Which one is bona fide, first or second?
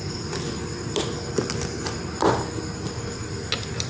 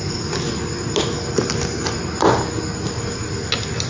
second